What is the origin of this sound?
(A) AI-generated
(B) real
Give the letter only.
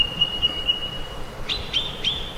B